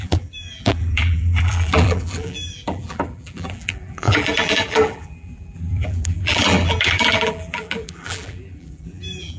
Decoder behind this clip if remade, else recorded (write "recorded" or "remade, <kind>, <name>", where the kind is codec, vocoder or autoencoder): remade, vocoder, BigVGAN v2